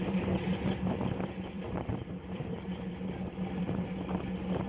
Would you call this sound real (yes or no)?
no